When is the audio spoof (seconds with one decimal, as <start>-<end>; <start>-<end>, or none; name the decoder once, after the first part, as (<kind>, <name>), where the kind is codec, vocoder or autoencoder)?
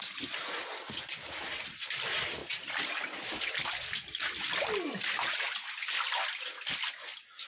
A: none